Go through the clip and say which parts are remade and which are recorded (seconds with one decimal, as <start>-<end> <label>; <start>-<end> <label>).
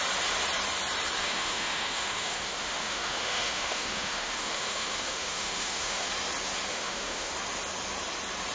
0.0-1.2 recorded; 1.2-6.1 remade; 6.1-6.7 recorded; 6.7-7.3 remade; 7.3-8.5 recorded